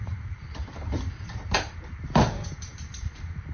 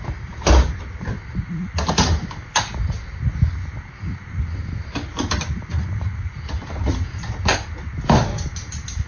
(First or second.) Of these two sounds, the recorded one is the second